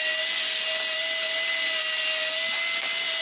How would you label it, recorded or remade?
recorded